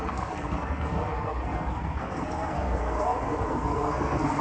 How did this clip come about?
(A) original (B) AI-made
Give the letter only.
B